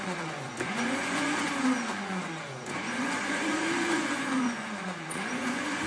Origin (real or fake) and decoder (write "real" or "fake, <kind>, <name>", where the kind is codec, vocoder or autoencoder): fake, vocoder, Vocos